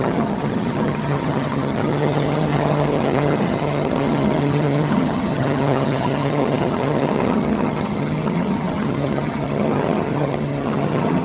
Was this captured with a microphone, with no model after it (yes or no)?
no